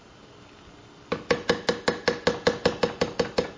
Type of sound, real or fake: real